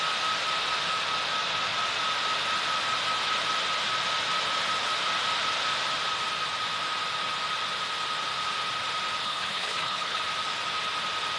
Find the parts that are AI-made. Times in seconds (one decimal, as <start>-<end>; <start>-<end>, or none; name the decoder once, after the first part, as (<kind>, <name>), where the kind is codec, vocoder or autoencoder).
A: 9.2-10.2 (codec, HILCodec)